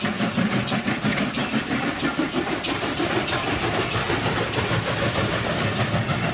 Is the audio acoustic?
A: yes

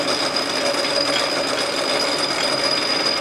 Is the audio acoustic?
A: yes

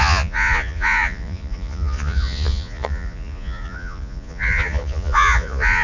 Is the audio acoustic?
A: no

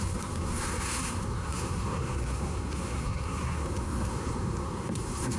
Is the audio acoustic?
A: no